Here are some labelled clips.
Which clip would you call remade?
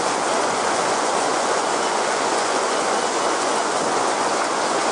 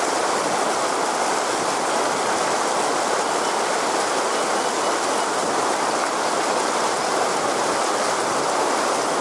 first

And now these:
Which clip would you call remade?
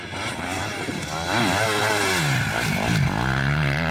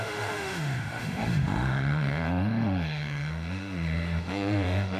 second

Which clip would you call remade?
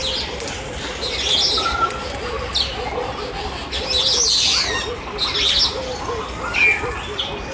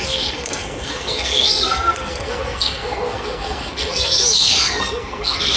second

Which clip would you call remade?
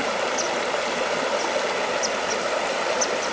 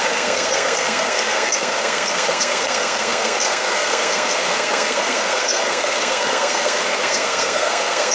second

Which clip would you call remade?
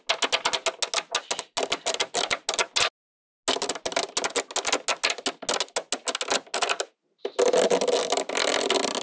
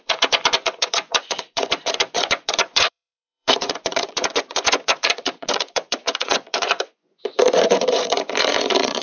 second